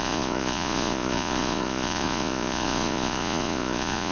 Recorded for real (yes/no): no